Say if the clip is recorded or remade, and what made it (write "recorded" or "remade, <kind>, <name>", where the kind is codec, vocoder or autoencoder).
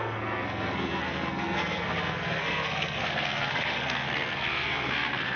remade, codec, SNAC